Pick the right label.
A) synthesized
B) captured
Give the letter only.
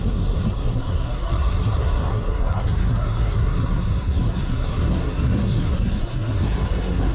A